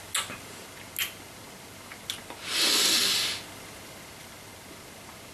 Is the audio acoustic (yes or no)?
yes